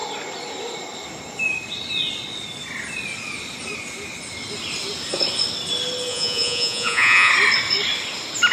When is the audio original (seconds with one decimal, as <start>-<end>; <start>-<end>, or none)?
0.0-6.1; 7.3-8.5